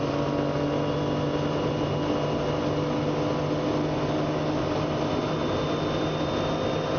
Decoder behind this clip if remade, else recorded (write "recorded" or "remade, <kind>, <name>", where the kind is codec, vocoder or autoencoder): recorded